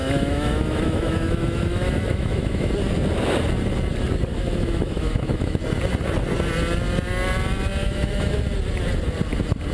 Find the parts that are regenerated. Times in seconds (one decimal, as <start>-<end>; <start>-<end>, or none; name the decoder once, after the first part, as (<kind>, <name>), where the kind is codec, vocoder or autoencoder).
0.0-2.7 (autoencoder, DAC-VAE); 4.3-5.6; 7.8-8.4